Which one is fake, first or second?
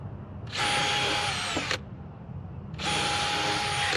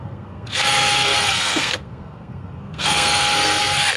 second